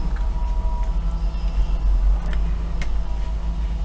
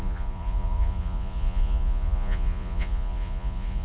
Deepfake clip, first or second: second